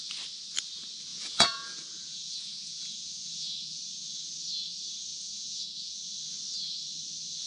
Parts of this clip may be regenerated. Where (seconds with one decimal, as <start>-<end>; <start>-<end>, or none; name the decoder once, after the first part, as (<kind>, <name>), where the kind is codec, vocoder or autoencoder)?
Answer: 1.1-3.8 (vocoder, Vocos); 5.1-5.9